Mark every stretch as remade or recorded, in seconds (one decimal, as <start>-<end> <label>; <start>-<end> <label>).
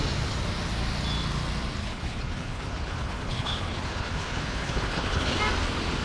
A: 0.0-1.8 recorded; 1.8-5.4 remade; 5.4-6.0 recorded